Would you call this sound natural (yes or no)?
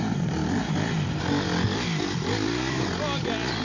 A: yes